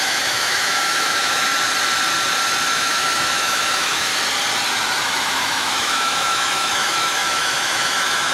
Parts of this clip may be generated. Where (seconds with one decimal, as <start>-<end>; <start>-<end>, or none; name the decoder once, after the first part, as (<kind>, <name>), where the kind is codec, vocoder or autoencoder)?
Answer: 0.0-1.5 (autoencoder, DAC-VAE); 2.7-4.1; 5.0-8.3